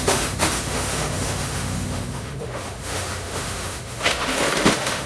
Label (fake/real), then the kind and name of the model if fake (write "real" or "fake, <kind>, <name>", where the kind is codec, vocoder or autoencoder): fake, autoencoder, DAC-VAE